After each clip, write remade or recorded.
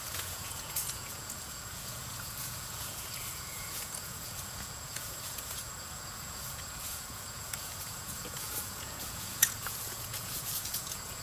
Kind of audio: remade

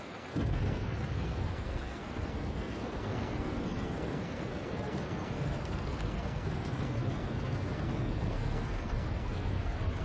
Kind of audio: remade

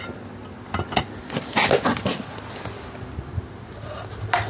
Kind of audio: recorded